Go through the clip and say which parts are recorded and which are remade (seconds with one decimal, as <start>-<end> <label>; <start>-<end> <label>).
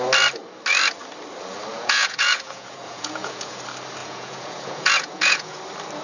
0.0-1.7 recorded; 1.7-3.6 remade; 3.6-4.0 recorded; 4.0-5.6 remade; 5.6-6.0 recorded